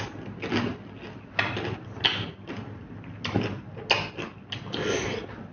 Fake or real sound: real